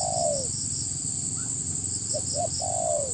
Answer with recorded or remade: recorded